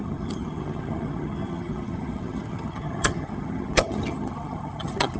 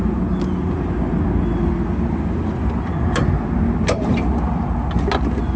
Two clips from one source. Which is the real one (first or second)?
second